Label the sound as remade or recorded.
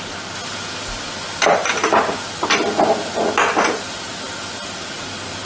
recorded